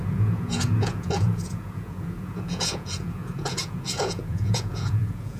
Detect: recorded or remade remade